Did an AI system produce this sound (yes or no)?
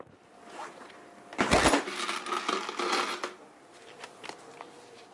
no